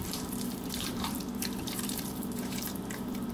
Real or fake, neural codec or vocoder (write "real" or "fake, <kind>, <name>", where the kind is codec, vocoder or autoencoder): fake, vocoder, BigVGAN v2